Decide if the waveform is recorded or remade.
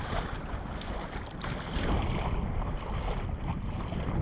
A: recorded